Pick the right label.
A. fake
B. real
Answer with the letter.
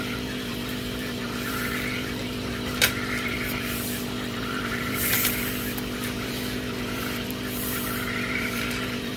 A